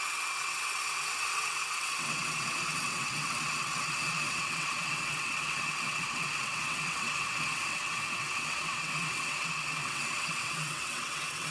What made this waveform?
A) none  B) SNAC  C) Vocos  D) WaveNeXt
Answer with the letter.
D